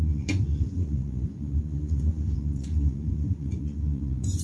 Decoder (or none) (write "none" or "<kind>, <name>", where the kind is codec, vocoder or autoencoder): vocoder, Vocos